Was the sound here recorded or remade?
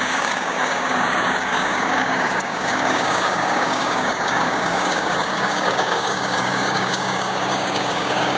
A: remade